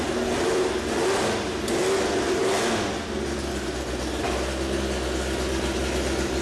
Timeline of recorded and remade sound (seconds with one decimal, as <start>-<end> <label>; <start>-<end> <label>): 0.0-6.4 recorded